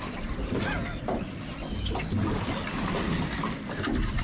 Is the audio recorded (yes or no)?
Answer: yes